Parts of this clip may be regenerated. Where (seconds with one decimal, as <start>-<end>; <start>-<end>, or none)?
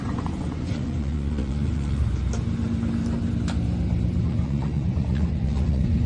0.0-2.0; 4.2-6.1